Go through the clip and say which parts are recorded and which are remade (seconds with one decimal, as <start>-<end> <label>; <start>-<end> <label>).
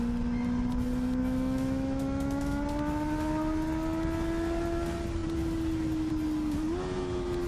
0.0-1.2 recorded; 1.2-2.6 remade; 2.6-7.5 recorded